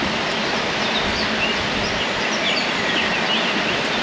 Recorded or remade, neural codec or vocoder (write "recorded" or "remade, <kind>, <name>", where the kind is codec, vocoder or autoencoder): recorded